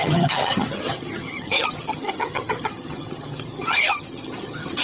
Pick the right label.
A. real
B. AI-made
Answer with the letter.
B